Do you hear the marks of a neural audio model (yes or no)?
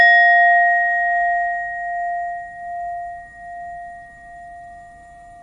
yes